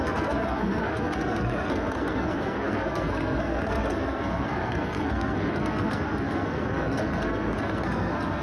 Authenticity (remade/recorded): remade